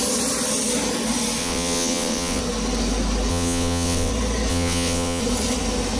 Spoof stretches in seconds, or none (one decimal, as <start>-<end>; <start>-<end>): 1.4-2.4; 3.3-4.1; 4.5-5.2